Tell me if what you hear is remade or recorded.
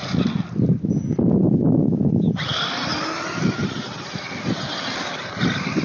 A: recorded